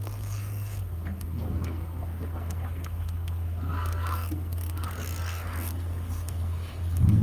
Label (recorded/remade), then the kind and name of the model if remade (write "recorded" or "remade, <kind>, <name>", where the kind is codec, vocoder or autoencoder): remade, codec, SNAC